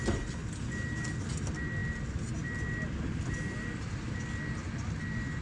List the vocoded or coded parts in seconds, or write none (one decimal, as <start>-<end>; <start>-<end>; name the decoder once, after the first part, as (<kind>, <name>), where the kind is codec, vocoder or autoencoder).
none